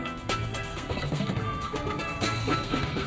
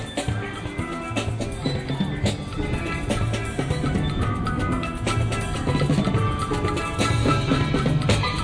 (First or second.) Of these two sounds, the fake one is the first